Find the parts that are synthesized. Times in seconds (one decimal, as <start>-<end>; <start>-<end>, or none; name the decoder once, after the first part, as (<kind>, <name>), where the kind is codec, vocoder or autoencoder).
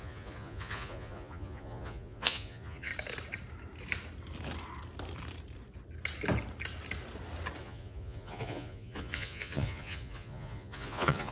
0.0-2.9 (vocoder, Vocos); 7.6-11.3